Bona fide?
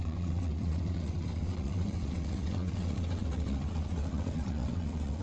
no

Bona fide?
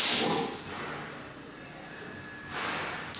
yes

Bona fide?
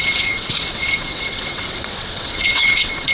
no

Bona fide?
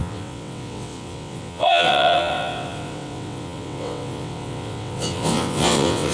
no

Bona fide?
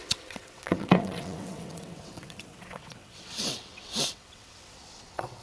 no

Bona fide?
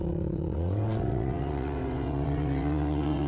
no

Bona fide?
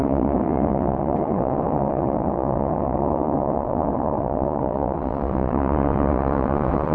no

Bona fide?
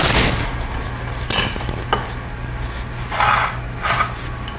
yes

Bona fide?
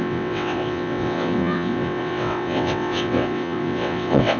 no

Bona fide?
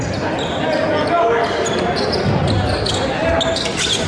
yes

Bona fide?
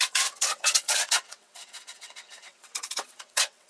no